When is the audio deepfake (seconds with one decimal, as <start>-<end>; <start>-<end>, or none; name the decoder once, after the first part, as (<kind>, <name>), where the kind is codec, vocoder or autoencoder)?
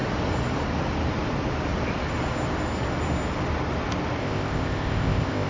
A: 4.2-5.5 (codec, ZipCodec)